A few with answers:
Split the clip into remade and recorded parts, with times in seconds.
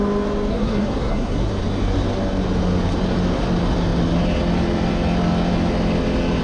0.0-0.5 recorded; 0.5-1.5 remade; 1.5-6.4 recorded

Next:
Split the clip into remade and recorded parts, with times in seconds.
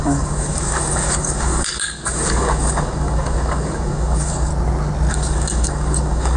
0.0-4.5 remade; 4.5-5.1 recorded; 5.1-6.4 remade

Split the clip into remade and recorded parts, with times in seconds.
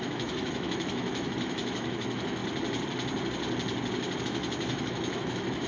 0.0-2.4 remade; 2.4-4.2 recorded; 4.2-5.7 remade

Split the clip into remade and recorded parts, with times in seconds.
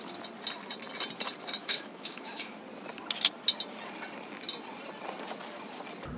0.0-1.6 recorded; 1.6-2.6 remade; 2.6-6.2 recorded